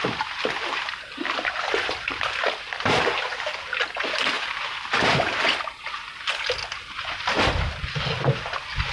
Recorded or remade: recorded